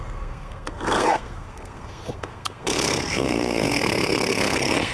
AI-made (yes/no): yes